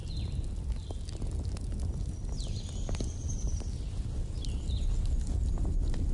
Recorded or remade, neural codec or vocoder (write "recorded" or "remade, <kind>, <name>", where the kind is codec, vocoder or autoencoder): recorded